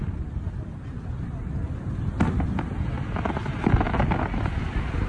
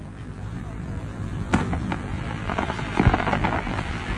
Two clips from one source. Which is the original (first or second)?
first